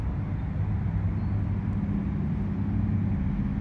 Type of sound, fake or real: real